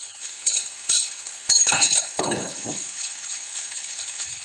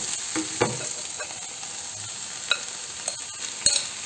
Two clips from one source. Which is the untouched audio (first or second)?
second